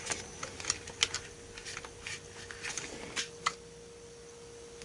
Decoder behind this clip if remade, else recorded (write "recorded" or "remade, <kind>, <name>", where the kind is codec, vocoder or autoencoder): recorded